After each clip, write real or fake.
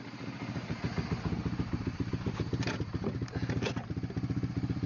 real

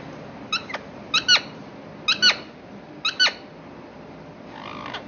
real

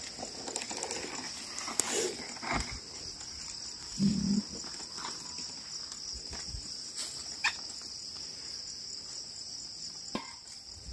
real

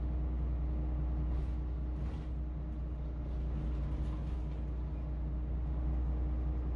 real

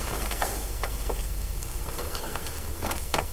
fake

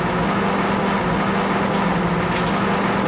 real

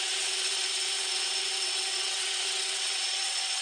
fake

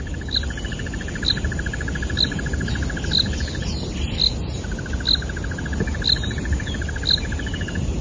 real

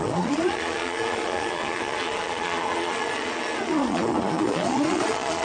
fake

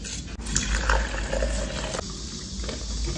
real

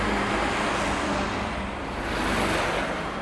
real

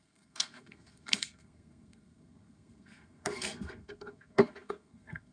fake